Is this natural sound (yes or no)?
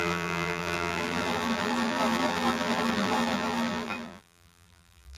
no